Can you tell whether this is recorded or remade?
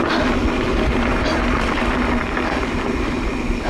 recorded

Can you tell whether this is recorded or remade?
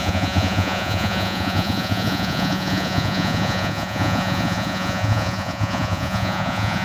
remade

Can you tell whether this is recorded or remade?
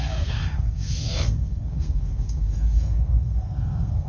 remade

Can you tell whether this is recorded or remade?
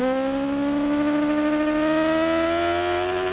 recorded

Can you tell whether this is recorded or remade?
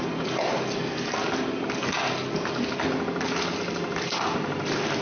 recorded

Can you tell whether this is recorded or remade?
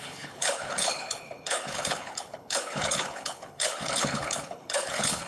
remade